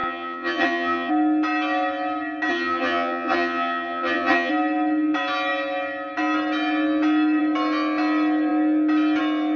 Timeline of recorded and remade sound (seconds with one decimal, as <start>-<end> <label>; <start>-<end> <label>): 0.0-1.1 remade; 1.1-2.5 recorded; 2.5-4.5 remade; 4.5-9.6 recorded